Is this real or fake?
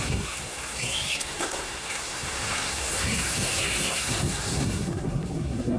fake